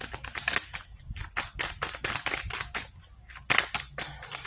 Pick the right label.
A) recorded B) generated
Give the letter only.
A